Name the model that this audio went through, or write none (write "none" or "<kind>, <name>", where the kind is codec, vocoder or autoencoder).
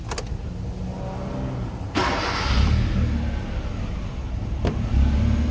none